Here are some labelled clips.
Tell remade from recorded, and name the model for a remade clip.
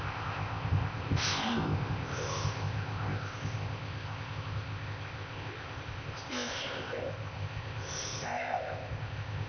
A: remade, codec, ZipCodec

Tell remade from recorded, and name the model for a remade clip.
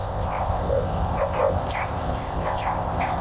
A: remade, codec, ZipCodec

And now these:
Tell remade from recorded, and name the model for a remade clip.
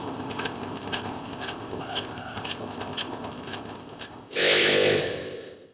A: remade, codec, ZipCodec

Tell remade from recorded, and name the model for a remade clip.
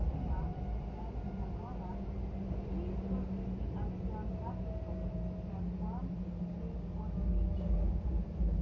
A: recorded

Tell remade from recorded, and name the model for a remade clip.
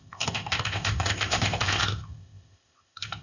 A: remade, codec, ZipCodec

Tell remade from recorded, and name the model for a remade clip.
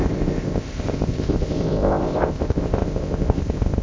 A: remade, codec, ZipCodec